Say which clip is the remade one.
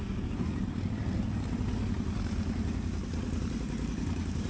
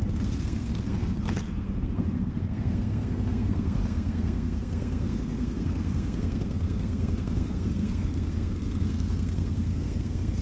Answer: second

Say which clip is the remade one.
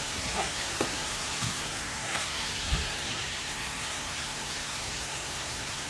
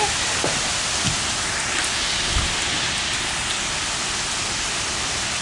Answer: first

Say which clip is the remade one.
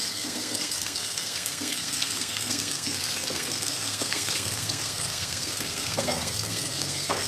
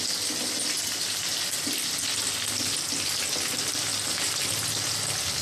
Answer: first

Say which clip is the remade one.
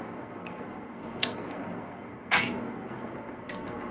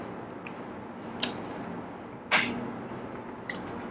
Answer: first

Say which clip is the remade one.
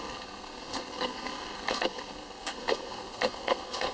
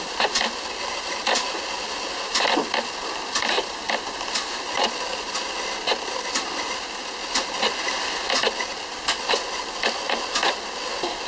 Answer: first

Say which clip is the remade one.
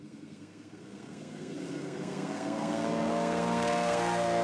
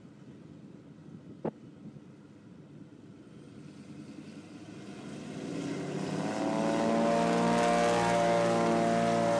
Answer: first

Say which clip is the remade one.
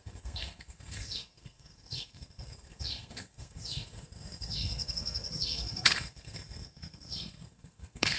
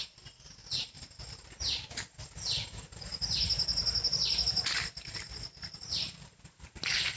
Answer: first